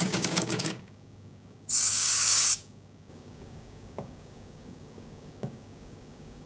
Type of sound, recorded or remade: remade